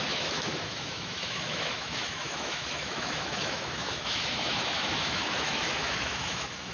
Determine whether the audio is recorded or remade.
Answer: remade